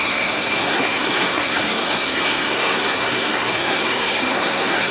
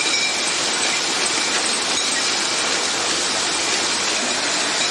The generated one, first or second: first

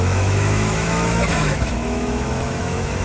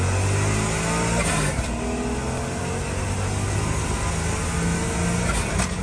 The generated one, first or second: first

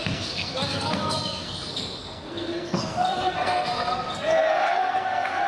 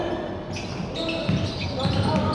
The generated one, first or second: first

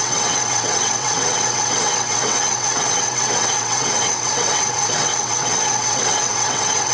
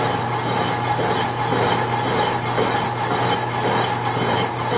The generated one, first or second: first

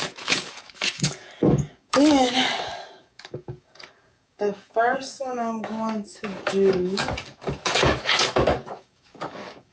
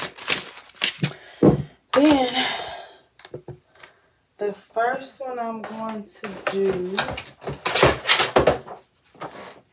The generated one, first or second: first